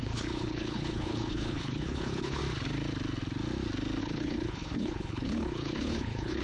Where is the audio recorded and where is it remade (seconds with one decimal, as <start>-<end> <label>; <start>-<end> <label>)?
0.0-2.4 remade; 2.4-4.0 recorded; 4.0-6.4 remade